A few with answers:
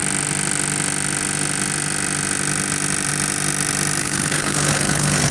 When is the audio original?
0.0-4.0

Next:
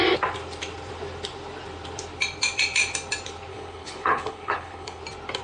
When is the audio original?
0.0-3.5; 5.0-5.4

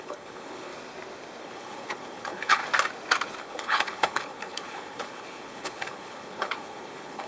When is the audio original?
0.7-1.4; 2.6-3.4

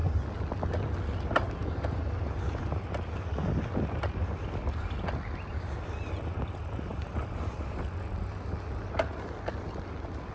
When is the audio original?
0.0-10.3

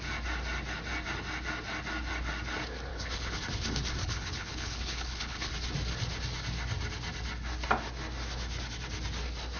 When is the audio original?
0.0-2.9; 3.4-4.0; 5.5-9.6

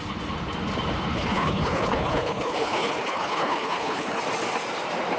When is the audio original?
0.0-1.1; 4.2-5.2

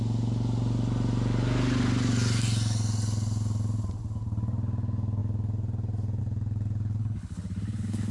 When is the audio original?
0.0-7.0